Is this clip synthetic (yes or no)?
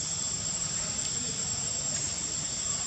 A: yes